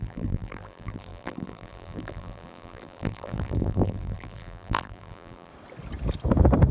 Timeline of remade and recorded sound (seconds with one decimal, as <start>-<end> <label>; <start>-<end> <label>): 0.0-5.5 remade; 5.5-6.7 recorded